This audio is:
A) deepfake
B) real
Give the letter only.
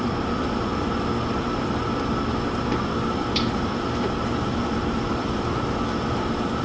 A